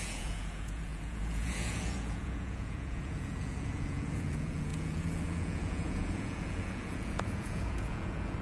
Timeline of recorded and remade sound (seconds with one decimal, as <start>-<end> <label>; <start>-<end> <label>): 0.0-8.4 remade

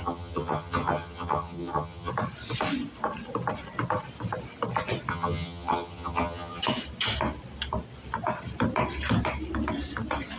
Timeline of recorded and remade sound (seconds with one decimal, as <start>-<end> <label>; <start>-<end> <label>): 0.0-2.1 remade; 2.1-5.1 recorded; 5.1-6.6 remade; 6.6-10.4 recorded